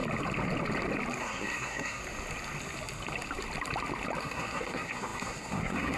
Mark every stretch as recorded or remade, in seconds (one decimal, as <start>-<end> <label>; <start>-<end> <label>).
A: 0.0-1.2 recorded; 1.2-2.0 remade; 2.0-4.2 recorded; 4.2-6.0 remade